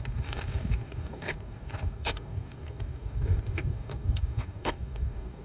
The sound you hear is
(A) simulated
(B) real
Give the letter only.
A